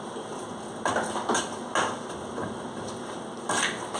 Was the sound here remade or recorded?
recorded